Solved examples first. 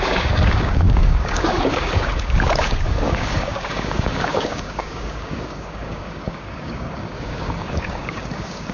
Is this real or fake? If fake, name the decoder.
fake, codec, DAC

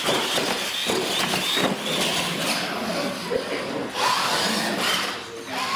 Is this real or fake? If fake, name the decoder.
real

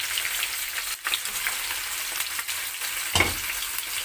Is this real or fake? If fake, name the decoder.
real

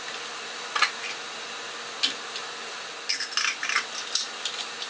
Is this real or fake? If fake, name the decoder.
real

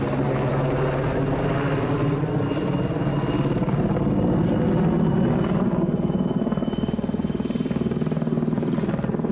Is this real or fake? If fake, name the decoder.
real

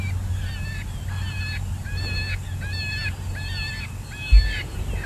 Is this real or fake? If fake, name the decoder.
real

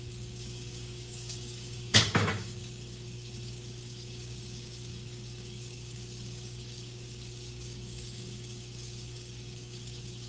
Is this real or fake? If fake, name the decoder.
fake, codec, DAC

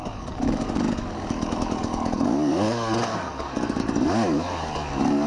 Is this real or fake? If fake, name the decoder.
fake, codec, DAC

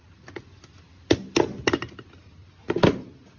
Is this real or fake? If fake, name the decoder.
real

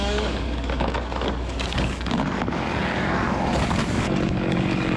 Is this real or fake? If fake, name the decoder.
fake, codec, DAC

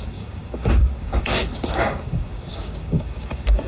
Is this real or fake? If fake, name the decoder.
fake, codec, DAC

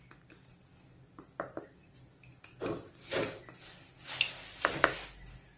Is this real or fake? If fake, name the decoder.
real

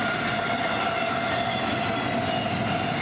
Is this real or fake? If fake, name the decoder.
real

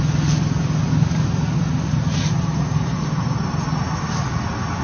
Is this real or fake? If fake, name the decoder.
real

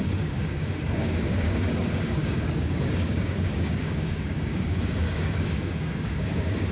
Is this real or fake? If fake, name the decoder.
fake, codec, DAC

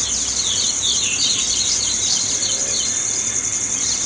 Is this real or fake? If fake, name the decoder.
real